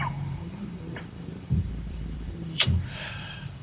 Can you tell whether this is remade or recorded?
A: remade